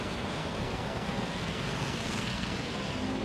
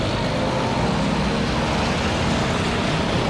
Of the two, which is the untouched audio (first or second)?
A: second